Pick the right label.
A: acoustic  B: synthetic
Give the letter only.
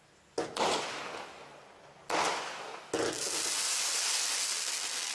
A